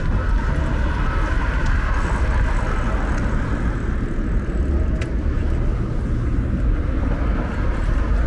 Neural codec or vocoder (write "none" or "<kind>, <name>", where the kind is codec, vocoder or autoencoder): none